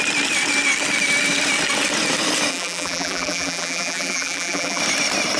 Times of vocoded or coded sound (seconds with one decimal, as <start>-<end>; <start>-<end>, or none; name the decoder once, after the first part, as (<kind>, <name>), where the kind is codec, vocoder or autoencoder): 2.5-4.8 (vocoder, BigVGAN v2)